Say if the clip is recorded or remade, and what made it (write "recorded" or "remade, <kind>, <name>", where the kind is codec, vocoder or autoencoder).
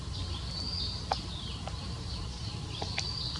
recorded